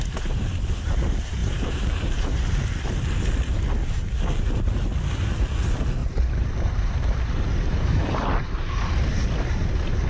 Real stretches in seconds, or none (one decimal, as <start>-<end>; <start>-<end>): 0.0-1.4; 2.6-6.0; 8.9-10.1